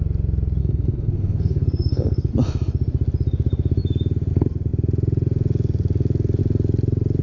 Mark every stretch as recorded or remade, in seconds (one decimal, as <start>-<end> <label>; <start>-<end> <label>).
0.0-0.6 recorded; 0.6-2.3 remade; 2.3-7.2 recorded